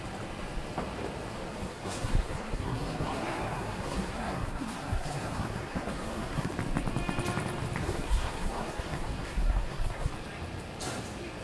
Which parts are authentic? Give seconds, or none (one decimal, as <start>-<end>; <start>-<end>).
0.0-1.5; 6.5-7.8; 10.1-11.4